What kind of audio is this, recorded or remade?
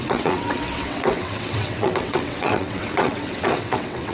remade